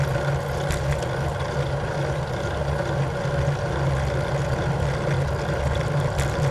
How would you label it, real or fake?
real